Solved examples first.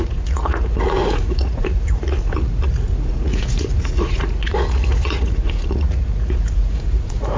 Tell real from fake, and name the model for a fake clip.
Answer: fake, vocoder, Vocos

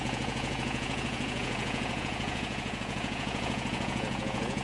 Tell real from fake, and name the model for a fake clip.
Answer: fake, vocoder, Vocos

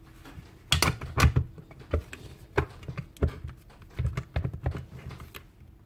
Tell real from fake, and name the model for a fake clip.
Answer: real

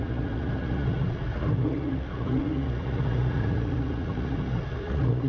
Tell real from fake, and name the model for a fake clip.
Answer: fake, vocoder, Vocos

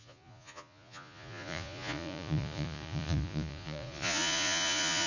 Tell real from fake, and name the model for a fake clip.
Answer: fake, vocoder, Vocos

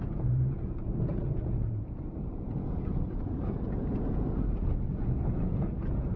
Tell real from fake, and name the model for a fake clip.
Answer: fake, vocoder, Vocos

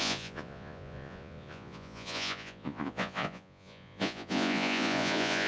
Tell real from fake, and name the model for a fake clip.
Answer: fake, vocoder, Vocos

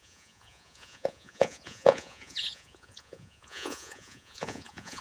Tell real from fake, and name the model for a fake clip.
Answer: fake, vocoder, Vocos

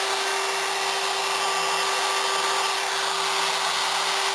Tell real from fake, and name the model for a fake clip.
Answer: real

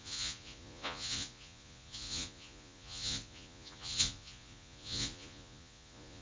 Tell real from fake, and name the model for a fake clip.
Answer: fake, vocoder, Vocos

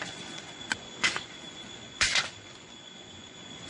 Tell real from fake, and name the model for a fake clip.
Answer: fake, vocoder, Vocos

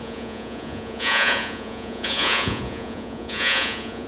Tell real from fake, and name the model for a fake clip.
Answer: fake, vocoder, Vocos